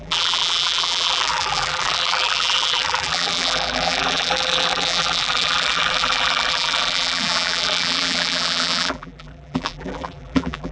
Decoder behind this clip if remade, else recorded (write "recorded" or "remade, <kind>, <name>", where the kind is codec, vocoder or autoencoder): remade, vocoder, BigVGAN v2